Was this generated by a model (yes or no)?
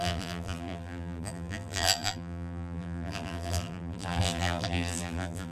yes